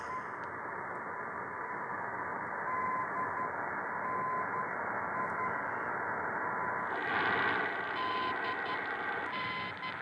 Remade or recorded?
recorded